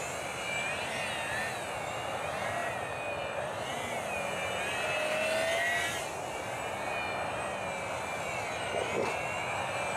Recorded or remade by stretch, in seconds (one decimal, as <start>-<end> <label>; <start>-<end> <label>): 0.0-10.0 recorded